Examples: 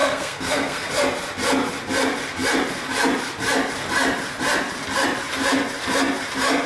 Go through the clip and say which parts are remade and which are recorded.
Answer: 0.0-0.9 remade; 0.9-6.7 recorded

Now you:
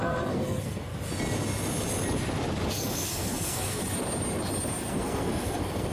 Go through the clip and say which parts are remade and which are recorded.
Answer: 0.0-0.9 remade; 0.9-2.7 recorded; 2.7-3.8 remade; 3.8-4.9 recorded; 4.9-5.9 remade

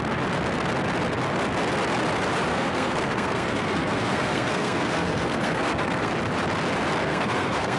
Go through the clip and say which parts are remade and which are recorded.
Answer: 0.0-2.5 recorded; 2.5-6.1 remade; 6.1-7.0 recorded; 7.0-7.8 remade

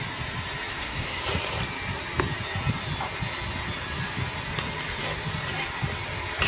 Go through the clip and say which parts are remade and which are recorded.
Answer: 0.0-0.7 recorded; 0.7-1.2 remade; 1.2-6.5 recorded